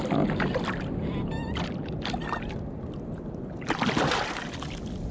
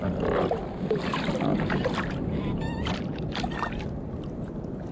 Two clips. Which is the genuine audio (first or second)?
first